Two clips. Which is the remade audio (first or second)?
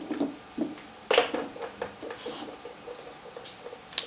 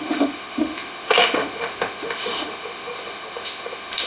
second